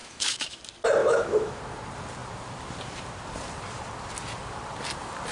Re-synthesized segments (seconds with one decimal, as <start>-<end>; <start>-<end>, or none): 0.0-0.6; 1.0-1.6